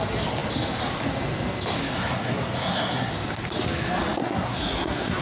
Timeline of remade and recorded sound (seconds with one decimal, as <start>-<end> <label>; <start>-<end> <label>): 0.0-1.9 recorded; 1.9-3.1 remade; 3.1-4.2 recorded; 4.2-5.2 remade